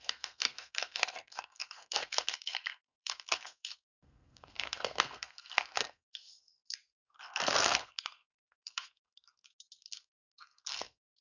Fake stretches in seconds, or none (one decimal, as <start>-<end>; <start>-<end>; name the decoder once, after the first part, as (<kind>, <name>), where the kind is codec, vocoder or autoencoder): 0.0-11.2 (codec, SNAC)